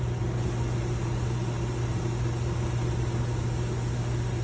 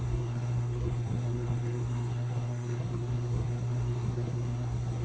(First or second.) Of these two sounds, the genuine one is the first